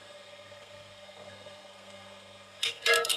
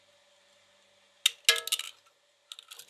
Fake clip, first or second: first